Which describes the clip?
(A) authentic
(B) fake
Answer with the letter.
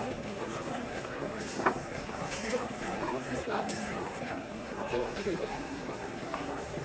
B